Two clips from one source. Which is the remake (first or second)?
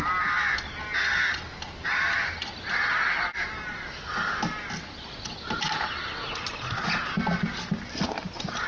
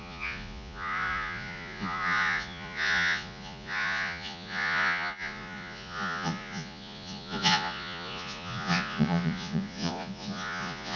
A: second